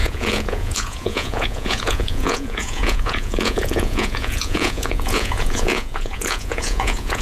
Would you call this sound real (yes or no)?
no